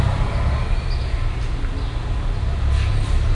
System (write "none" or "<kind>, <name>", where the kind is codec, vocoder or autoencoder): none